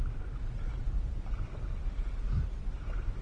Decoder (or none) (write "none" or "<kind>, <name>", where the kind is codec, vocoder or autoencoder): none